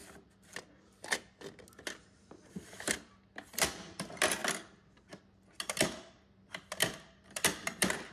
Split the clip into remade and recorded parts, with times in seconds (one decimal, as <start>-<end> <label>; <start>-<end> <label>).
0.0-8.1 recorded